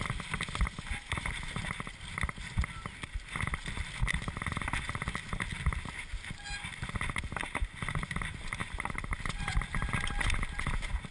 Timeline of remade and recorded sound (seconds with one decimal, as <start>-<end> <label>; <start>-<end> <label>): 0.0-11.1 recorded